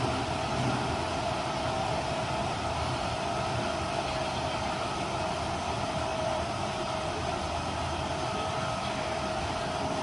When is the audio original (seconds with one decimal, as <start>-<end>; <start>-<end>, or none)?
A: 0.0-1.1; 4.1-6.1; 9.4-10.0